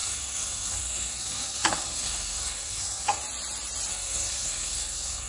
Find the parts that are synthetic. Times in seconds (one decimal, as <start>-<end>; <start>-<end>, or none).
0.0-3.2; 3.9-5.3